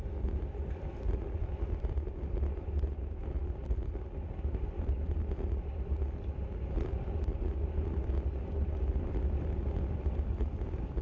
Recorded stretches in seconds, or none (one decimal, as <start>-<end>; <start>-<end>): 0.0-11.0

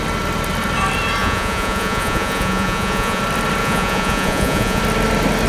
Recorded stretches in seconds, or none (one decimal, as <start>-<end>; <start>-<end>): 0.0-1.2; 3.2-3.6; 4.8-5.5

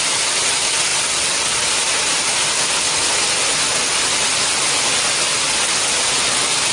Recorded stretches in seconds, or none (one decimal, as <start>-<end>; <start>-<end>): 0.0-6.7

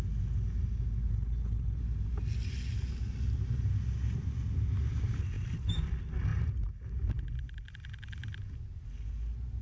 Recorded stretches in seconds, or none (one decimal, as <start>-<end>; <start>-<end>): 0.0-1.1; 1.8-9.6

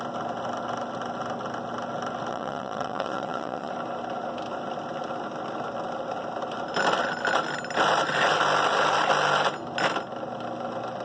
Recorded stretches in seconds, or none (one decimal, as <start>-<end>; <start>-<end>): 0.0-2.3; 3.7-11.0